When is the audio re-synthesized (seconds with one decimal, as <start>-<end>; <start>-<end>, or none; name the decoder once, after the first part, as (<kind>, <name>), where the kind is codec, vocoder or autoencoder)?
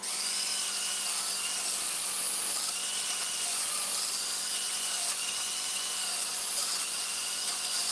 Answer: 0.0-0.5 (vocoder, Vocos); 3.2-3.9; 4.5-7.9